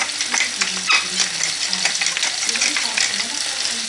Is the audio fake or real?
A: real